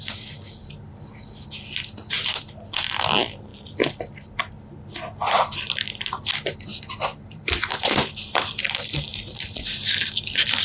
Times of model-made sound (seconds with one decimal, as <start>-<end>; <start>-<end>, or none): 3.5-4.6; 7.1-8.6; 9.1-9.7